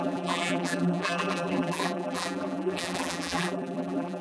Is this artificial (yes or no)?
yes